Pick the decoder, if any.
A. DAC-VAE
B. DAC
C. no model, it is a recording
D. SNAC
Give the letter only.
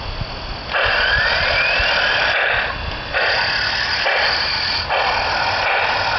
C